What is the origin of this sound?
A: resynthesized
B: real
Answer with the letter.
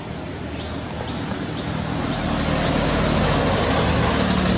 B